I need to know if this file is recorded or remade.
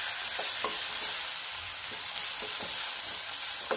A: recorded